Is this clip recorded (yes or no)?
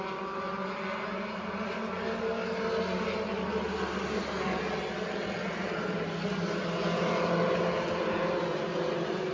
yes